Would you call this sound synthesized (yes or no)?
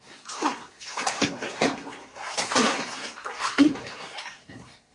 yes